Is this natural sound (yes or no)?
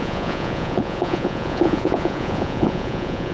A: no